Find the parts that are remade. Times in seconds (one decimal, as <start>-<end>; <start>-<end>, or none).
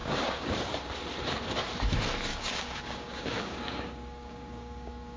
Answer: 0.0-0.7; 2.3-5.2